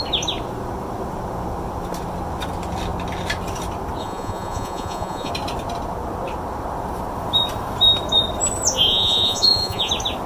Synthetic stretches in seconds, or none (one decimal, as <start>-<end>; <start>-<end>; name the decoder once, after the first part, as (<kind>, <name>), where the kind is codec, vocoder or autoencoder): 4.0-5.3 (vocoder, Vocos); 8.9-9.9